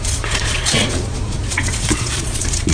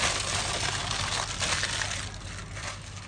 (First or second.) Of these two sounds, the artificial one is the first